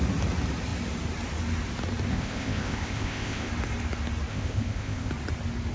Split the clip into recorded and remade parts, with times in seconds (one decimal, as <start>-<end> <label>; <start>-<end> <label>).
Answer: 0.0-2.1 recorded; 2.1-3.5 remade; 3.5-4.3 recorded; 4.3-5.1 remade; 5.1-5.7 recorded

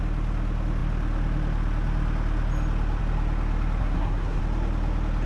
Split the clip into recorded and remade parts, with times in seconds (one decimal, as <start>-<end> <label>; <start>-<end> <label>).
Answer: 0.0-3.8 recorded; 3.8-4.4 remade; 4.4-5.3 recorded

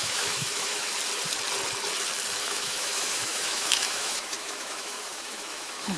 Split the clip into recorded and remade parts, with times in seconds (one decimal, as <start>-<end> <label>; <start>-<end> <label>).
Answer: 0.0-0.9 remade; 0.9-2.4 recorded; 2.4-6.0 remade